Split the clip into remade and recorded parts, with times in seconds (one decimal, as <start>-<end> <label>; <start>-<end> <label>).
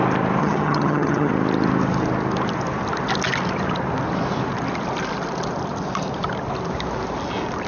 0.0-0.4 recorded; 0.4-1.3 remade; 1.3-7.7 recorded